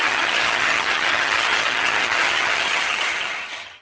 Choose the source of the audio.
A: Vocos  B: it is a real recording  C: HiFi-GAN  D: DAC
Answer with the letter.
C